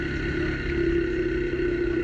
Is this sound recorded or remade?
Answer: recorded